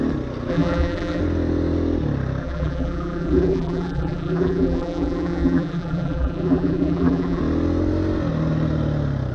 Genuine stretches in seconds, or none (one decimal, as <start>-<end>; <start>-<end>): 0.0-0.5; 1.2-2.4; 7.4-9.3